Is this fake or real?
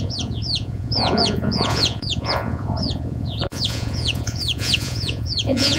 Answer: fake